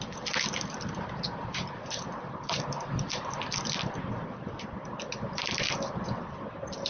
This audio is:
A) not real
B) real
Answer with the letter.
B